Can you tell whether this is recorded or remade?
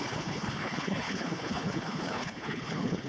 remade